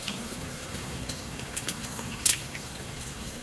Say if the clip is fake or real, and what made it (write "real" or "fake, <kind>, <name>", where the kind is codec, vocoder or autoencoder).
fake, codec, SNAC